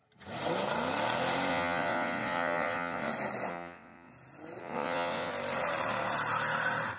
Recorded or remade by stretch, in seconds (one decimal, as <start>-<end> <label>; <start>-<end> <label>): 0.0-1.5 recorded; 1.5-3.1 remade; 3.1-3.5 recorded; 3.5-4.1 remade; 4.1-4.6 recorded; 4.6-5.3 remade; 5.3-7.0 recorded